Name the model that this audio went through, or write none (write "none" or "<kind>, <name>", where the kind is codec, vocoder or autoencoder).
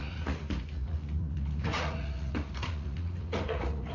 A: vocoder, Vocos